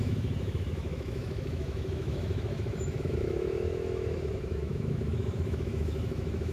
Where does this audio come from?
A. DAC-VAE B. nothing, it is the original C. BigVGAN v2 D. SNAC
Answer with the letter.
A